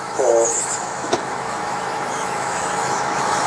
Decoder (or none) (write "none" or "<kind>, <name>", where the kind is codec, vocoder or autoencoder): autoencoder, DAC-VAE